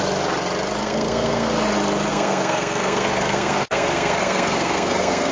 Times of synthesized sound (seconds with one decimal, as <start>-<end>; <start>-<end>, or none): 0.8-1.5; 2.1-5.3

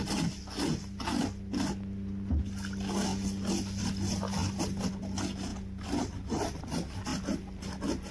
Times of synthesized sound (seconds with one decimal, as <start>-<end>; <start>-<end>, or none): 5.5-6.6

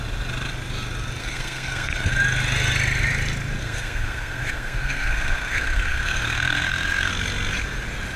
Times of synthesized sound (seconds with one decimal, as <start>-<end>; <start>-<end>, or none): 1.2-2.1; 3.6-7.1

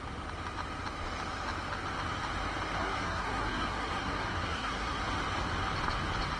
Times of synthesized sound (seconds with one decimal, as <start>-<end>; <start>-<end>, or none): 2.8-5.0

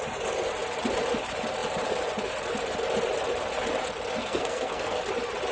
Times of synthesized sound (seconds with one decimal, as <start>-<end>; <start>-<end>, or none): 4.2-5.0